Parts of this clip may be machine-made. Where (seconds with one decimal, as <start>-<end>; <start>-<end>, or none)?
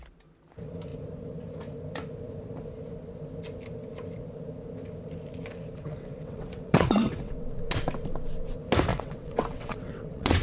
5.8-7.5; 8.9-10.4